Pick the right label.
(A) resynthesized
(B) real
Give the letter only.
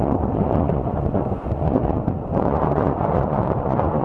A